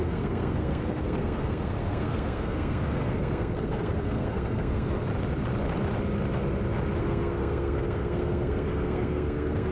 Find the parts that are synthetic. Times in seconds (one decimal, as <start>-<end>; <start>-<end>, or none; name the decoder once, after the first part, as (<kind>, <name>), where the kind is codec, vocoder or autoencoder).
0.0-5.1 (codec, SNAC); 7.0-9.7